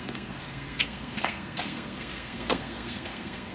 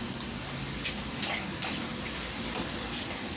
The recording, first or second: second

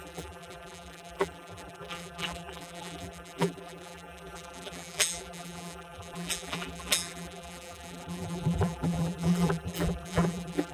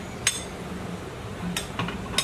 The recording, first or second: second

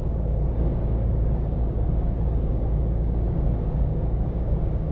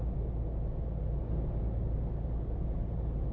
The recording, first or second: second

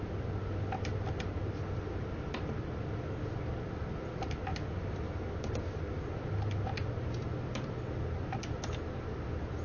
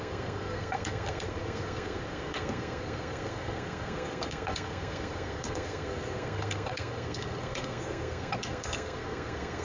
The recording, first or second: first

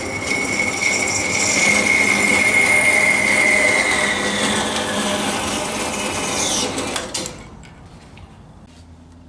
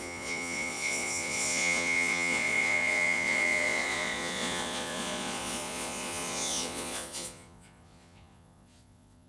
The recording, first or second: first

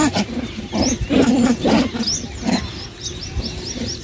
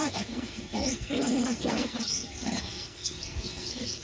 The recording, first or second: first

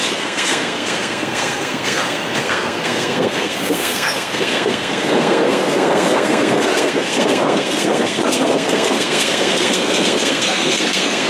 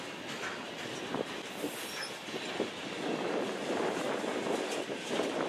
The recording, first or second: second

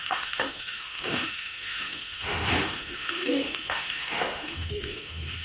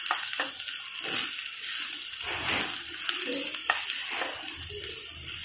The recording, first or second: second